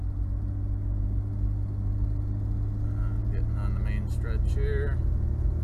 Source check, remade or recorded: recorded